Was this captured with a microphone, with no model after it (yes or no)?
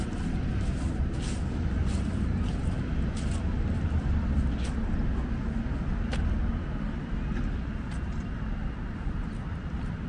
yes